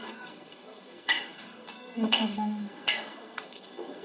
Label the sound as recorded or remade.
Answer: remade